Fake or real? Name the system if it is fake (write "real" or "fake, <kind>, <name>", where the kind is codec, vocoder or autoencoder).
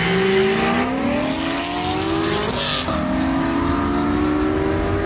real